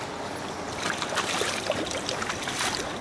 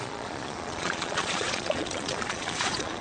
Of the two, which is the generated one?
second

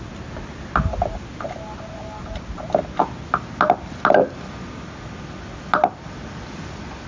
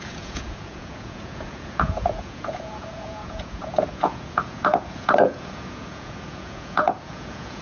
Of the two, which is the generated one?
second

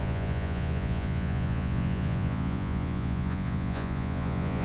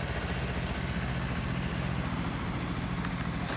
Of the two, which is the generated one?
first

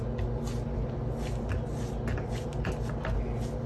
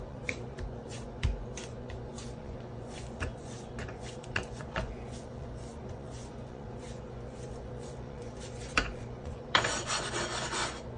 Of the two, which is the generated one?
second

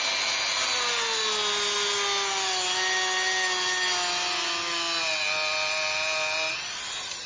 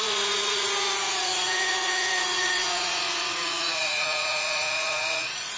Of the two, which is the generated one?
second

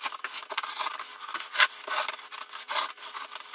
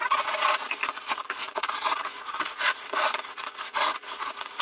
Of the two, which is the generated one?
second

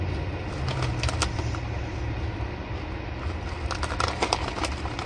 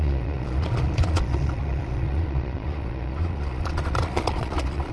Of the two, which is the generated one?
second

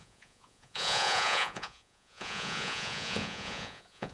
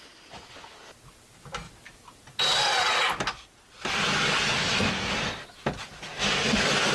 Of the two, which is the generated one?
first